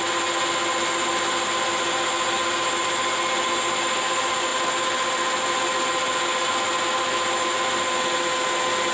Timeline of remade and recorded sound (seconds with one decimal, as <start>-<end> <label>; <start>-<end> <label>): 0.0-8.9 recorded